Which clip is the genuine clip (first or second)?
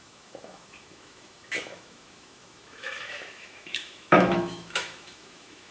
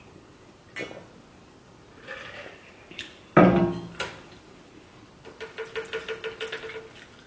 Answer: second